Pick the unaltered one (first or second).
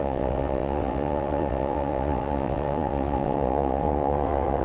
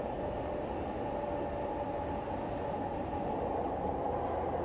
second